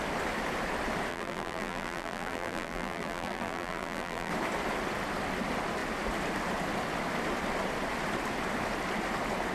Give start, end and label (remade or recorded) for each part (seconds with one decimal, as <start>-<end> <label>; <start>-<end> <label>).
0.0-1.1 recorded; 1.1-4.3 remade; 4.3-9.5 recorded